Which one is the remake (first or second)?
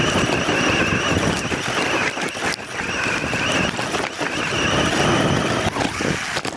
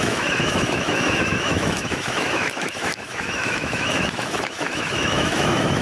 second